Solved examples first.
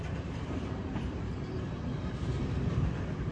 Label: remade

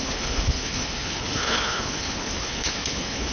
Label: remade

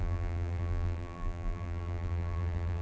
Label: remade